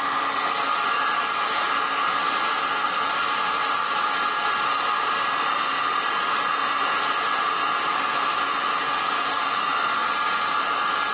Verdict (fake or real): real